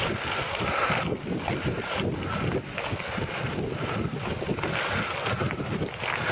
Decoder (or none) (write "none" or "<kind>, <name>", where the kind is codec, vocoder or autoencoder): none